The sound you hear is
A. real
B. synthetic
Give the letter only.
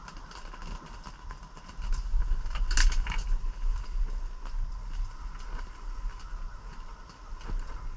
A